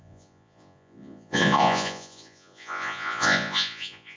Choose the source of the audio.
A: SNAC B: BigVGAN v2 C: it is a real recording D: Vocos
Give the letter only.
D